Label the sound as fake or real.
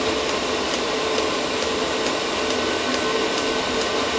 real